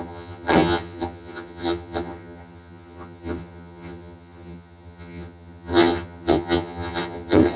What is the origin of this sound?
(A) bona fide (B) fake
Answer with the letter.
B